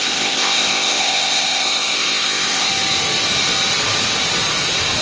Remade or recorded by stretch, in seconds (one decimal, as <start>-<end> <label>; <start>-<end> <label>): 0.0-2.7 remade; 2.7-5.0 recorded